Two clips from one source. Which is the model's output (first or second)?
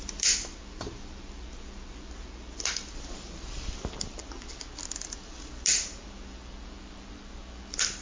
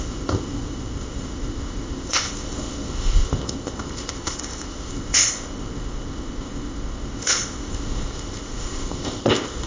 second